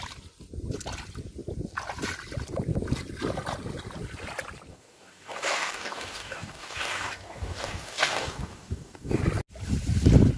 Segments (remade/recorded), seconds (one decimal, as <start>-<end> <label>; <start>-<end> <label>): 0.0-4.7 recorded; 4.7-9.2 remade; 9.2-10.4 recorded